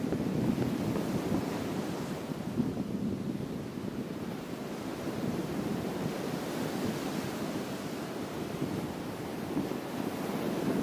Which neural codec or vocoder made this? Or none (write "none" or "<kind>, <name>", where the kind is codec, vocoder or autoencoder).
vocoder, BigVGAN v2